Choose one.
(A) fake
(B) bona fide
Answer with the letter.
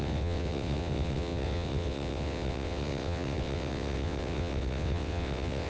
A